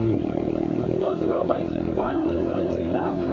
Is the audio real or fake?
fake